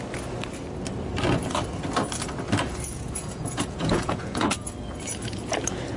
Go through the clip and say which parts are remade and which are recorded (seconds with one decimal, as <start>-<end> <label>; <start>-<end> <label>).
0.0-2.9 recorded; 2.9-4.7 remade; 4.7-6.0 recorded